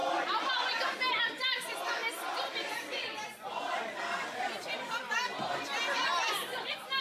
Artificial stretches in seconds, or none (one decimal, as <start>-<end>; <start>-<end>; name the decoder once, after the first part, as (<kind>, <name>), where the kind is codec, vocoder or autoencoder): none